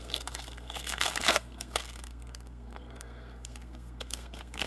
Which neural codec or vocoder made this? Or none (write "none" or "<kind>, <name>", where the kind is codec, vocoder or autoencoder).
codec, SNAC